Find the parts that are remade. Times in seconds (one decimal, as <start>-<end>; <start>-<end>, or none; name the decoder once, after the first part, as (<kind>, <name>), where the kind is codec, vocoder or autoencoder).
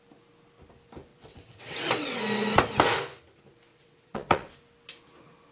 1.1-2.2 (vocoder, WaveNeXt); 3.7-4.5